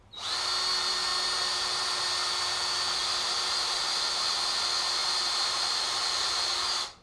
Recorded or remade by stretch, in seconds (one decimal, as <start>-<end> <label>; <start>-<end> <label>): 0.0-3.0 recorded; 3.0-3.8 remade; 3.8-5.0 recorded; 5.0-5.6 remade; 5.6-7.0 recorded